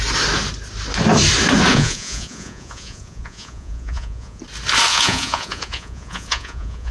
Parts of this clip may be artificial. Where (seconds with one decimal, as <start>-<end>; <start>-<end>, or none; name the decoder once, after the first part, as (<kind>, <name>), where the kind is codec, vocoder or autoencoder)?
1.7-4.4 (vocoder, Vocos); 4.9-6.9

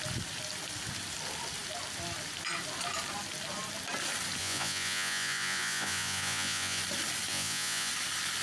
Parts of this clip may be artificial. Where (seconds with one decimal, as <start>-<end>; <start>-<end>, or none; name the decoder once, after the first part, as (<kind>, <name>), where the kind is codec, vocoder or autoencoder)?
4.4-6.8 (vocoder, Vocos); 7.3-7.9

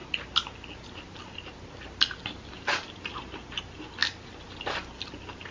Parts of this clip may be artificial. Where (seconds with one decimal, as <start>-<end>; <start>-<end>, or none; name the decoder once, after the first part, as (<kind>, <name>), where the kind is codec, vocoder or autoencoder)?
none